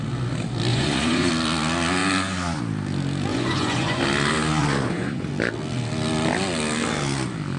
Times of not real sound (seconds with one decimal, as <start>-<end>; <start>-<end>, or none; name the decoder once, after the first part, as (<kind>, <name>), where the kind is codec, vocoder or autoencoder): 0.7-1.3 (vocoder, Vocos); 3.3-4.0; 4.6-5.3